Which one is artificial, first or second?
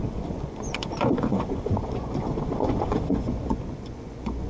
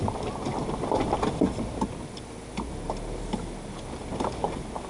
first